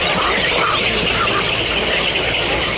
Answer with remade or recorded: recorded